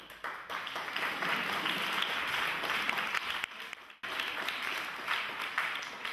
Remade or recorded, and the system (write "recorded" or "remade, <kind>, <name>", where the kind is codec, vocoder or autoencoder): recorded